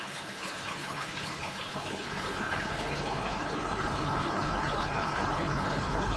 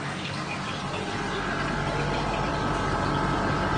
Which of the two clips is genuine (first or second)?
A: second